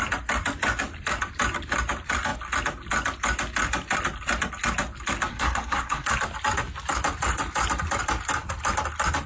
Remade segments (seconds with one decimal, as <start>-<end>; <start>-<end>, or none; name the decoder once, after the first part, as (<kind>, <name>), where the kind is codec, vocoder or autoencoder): 5.3-6.1 (codec, SNAC)